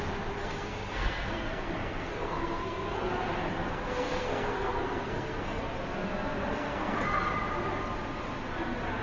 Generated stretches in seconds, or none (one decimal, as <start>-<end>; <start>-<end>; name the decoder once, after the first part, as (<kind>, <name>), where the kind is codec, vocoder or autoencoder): 0.4-3.1 (codec, SNAC); 3.5-5.6; 6.5-7.3